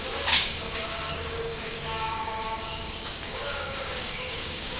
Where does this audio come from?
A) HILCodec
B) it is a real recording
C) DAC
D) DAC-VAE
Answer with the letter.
C